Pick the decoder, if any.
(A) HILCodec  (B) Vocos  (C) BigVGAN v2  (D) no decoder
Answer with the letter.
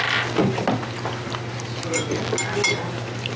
D